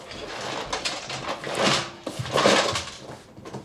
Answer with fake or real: real